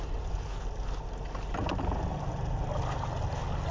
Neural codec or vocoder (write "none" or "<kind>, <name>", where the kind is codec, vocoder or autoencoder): none